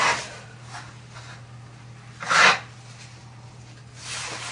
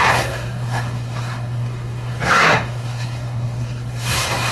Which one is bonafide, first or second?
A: first